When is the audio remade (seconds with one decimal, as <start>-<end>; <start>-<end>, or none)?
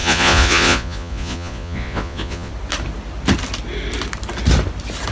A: 0.0-2.5